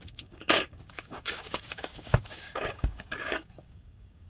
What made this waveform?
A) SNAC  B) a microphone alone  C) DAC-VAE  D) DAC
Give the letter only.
D